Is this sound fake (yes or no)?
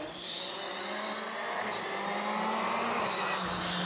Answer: no